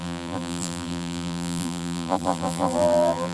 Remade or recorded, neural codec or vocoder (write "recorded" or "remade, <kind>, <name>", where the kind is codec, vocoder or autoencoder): remade, vocoder, BigVGAN v2